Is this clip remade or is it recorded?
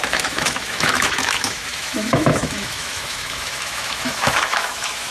remade